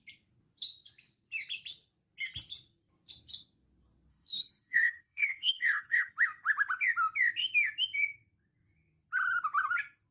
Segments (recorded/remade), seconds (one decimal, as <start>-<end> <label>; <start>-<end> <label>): 0.0-4.1 recorded; 4.1-6.1 remade; 6.1-10.1 recorded